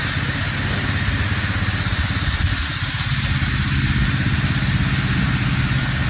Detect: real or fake real